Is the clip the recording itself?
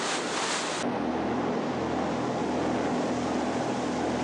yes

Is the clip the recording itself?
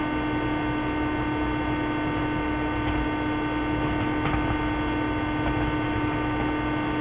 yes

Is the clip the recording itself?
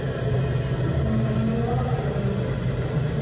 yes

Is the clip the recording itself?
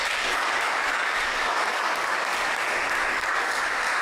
no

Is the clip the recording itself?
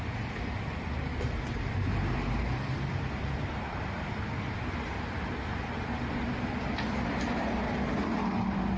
yes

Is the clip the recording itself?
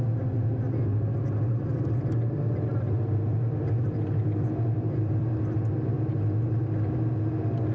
yes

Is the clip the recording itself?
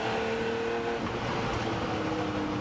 yes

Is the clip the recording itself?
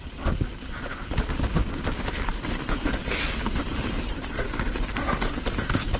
yes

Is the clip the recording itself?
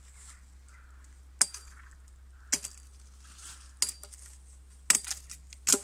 yes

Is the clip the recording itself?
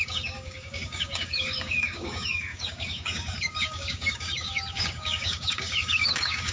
no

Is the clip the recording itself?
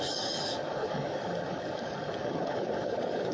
no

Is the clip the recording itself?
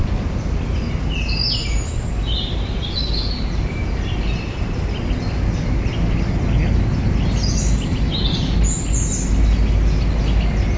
yes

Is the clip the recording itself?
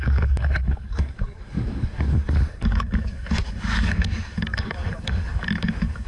no